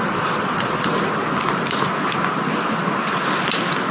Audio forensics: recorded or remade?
recorded